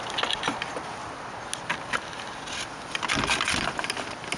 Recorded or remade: recorded